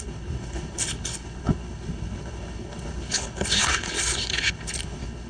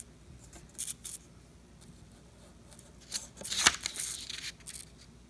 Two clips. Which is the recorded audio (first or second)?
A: second